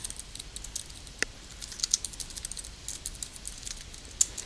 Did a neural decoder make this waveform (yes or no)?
no